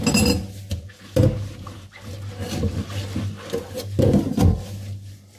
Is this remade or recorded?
recorded